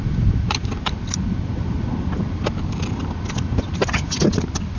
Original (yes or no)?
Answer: yes